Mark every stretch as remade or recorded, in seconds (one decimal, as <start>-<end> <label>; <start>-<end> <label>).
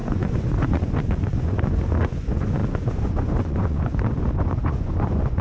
0.0-5.4 remade